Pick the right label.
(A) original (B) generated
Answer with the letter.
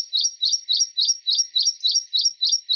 A